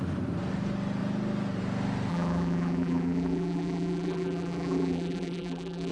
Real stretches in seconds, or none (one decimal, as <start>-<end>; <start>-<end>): 0.0-2.1